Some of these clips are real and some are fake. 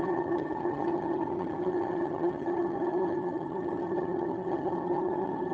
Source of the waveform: fake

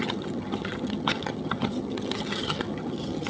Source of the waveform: fake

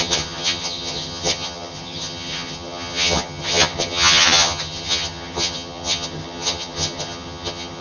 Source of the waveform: fake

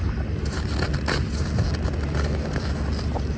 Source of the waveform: real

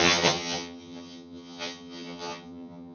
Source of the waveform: fake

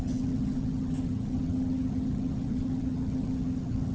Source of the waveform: fake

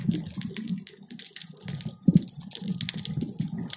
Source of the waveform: real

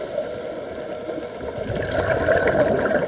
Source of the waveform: real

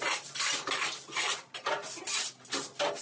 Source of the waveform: real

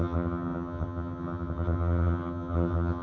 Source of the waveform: fake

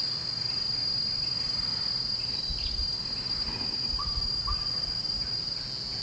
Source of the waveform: real